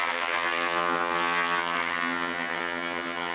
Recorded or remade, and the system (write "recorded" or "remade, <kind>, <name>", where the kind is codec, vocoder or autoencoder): remade, vocoder, HiFi-GAN